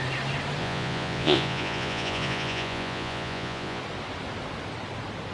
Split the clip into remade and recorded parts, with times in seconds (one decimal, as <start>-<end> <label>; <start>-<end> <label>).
0.0-0.6 recorded; 0.6-3.8 remade; 3.8-5.3 recorded